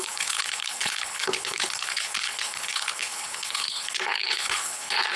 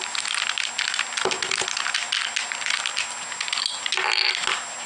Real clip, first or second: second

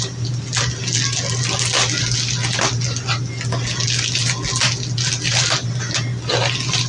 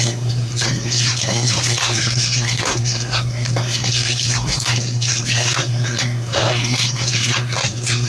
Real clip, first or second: first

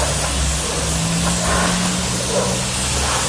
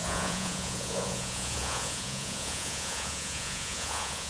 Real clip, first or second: first